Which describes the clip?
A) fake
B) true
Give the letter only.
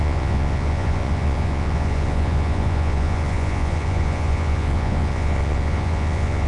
A